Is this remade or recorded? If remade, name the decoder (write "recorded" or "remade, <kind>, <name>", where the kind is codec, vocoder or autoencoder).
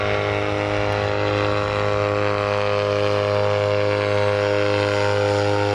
recorded